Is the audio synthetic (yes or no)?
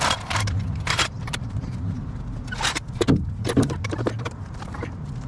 yes